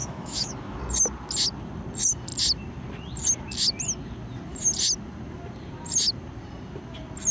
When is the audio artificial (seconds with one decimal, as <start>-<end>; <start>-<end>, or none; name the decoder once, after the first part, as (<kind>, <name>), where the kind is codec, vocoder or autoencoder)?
0.0-0.8 (autoencoder, DAC-VAE)